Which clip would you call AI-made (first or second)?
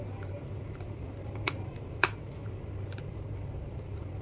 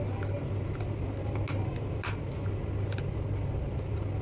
first